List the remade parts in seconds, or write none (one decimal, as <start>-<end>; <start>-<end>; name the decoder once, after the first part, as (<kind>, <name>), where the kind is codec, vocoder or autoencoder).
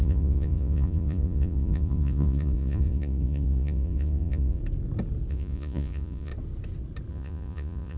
0.0-4.6 (vocoder, Vocos); 5.3-6.3; 7.1-8.0